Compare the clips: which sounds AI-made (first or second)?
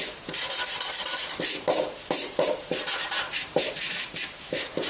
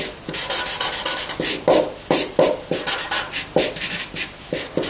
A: first